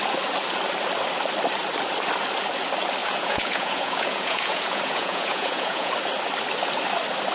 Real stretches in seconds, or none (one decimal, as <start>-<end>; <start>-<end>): 0.0-3.0; 5.9-7.3